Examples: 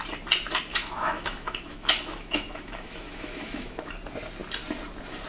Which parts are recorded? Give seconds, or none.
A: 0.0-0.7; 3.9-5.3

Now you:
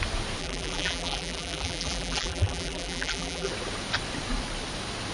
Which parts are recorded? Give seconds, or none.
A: 0.0-0.4; 3.5-5.1

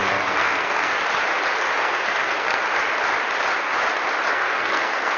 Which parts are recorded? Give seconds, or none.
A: 1.0-1.8; 2.6-4.3